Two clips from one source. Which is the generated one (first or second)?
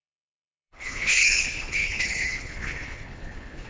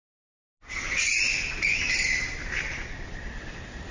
first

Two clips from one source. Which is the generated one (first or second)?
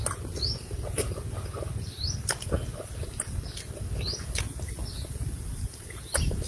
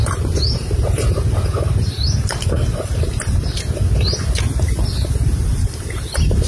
second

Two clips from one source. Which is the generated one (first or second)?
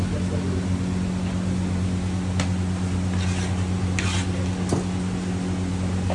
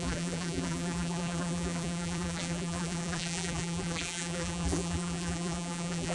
second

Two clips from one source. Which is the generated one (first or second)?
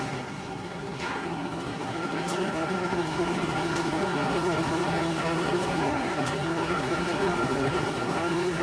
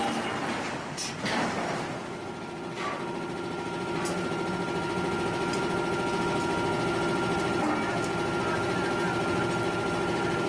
first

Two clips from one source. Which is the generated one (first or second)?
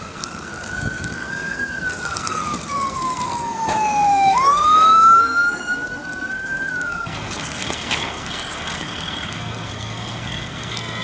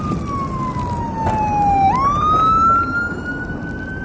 first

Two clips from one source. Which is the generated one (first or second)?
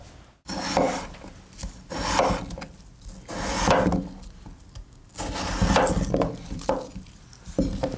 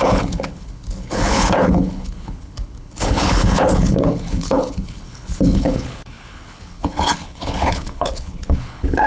second